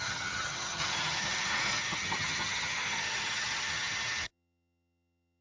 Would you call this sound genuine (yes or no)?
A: no